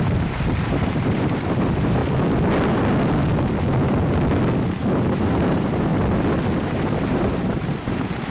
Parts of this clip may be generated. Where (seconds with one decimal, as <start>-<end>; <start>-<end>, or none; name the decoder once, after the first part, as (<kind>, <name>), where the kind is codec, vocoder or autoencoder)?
0.0-2.0 (vocoder, BigVGAN v2); 5.2-5.9; 6.6-8.3